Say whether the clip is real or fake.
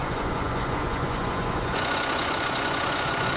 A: fake